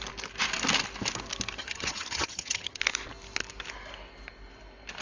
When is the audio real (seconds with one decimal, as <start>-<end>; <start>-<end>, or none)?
0.0-1.6; 2.8-5.0